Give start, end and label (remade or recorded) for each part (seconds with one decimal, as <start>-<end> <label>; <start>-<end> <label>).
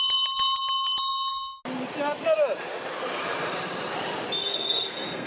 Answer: 0.0-4.4 recorded; 4.4-5.3 remade